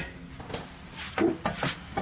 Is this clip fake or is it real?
real